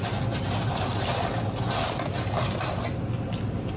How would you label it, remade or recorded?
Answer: recorded